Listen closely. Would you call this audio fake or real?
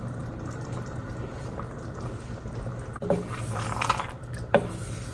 real